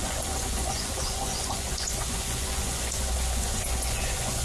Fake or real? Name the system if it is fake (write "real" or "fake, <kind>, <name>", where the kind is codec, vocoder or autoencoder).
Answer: fake, vocoder, Vocos